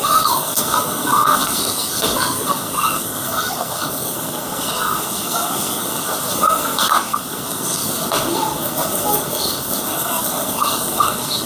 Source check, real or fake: fake